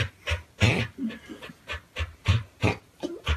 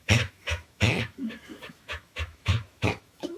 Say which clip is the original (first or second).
first